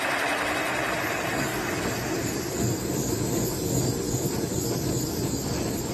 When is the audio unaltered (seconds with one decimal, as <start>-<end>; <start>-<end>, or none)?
0.0-5.9